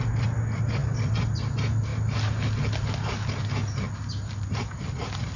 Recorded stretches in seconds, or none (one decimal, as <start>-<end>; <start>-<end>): 0.0-5.4